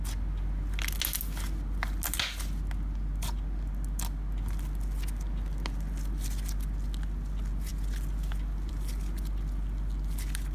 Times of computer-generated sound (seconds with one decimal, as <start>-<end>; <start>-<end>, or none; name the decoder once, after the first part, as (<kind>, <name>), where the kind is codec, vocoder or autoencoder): none